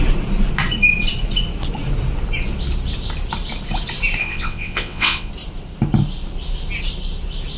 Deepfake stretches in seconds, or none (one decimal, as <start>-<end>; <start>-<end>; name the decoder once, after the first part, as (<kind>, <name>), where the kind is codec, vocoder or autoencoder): 4.2-5.3 (vocoder, WaveNeXt)